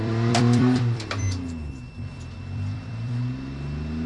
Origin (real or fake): fake